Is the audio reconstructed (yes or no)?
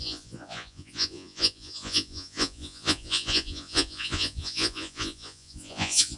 yes